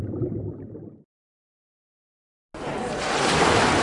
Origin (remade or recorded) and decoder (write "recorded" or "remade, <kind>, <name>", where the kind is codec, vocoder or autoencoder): recorded